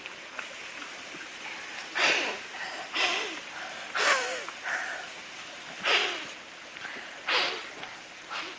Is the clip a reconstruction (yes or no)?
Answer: no